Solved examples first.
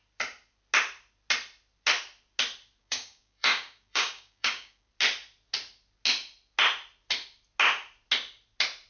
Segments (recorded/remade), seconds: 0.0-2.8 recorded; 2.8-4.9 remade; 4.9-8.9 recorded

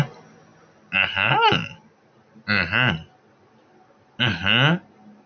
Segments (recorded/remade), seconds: 0.0-5.3 recorded

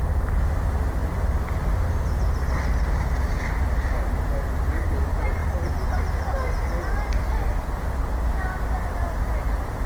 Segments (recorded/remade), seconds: 0.0-9.9 recorded

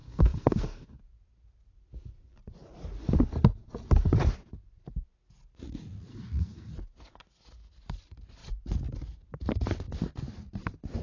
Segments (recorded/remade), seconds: 0.0-1.0 remade; 1.0-6.1 recorded; 6.1-6.7 remade; 6.7-11.0 recorded

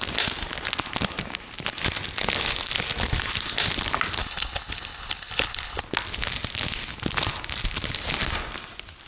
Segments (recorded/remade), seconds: 0.0-4.2 recorded; 4.2-5.8 remade; 5.8-9.1 recorded

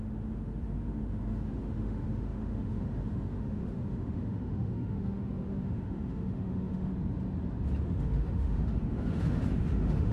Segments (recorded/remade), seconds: 0.0-6.9 remade; 6.9-7.8 recorded; 7.8-10.1 remade

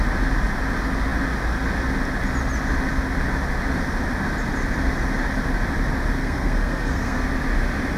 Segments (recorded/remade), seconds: 0.0-6.2 recorded; 6.2-7.2 remade; 7.2-8.0 recorded